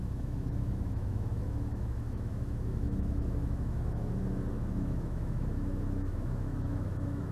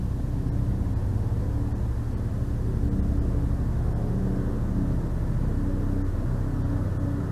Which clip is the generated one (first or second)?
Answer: first